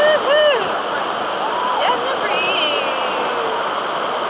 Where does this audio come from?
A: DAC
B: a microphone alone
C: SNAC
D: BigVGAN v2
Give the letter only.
D